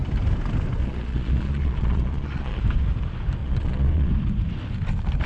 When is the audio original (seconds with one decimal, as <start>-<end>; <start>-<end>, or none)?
0.0-0.8; 2.6-3.4; 4.1-5.3